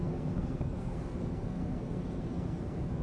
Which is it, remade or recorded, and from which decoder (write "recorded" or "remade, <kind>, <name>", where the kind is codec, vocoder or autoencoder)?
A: remade, codec, SNAC